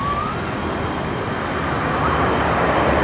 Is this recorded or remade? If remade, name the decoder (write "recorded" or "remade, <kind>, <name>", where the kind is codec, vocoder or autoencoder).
recorded